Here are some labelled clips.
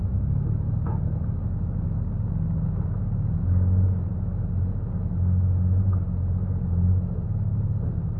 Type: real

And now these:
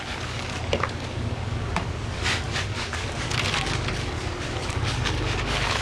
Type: fake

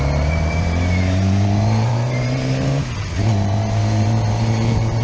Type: fake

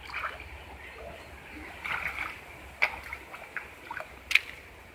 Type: real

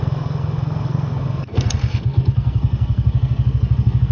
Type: fake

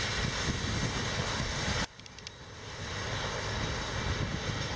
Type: real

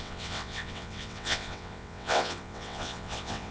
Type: fake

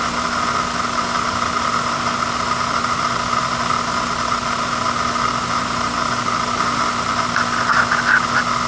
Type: real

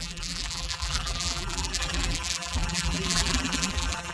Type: fake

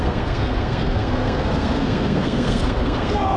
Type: fake